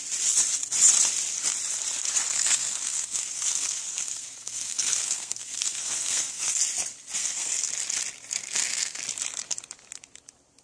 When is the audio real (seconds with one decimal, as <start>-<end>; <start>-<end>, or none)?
0.0-2.3; 6.6-7.2; 7.7-8.4; 9.0-10.6